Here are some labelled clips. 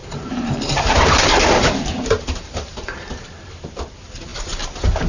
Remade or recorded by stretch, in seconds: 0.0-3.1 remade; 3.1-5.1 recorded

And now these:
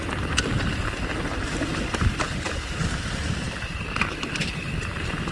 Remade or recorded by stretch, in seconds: 0.0-5.3 remade